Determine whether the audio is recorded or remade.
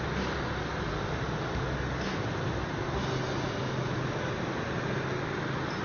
recorded